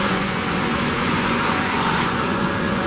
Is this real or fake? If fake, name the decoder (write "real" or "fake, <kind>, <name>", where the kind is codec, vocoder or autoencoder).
fake, vocoder, Vocos